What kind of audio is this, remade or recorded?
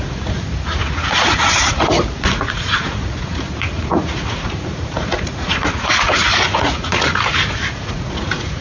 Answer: remade